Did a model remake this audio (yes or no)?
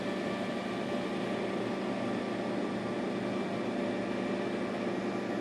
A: no